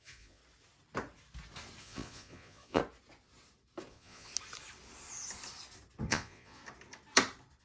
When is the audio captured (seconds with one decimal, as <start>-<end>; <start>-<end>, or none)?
0.4-1.8; 2.8-3.9; 4.3-6.1; 6.6-7.6